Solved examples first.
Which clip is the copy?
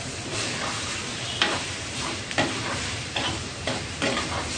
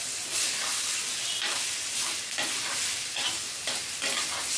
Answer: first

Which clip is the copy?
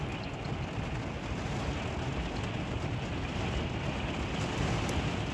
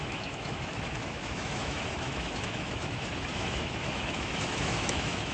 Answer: second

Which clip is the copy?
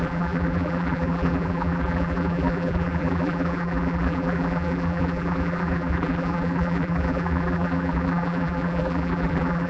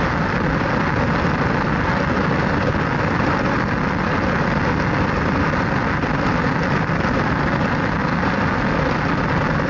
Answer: first